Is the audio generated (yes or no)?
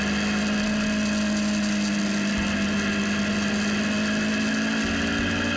no